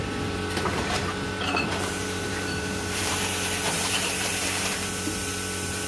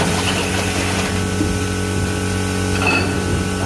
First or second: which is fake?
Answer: first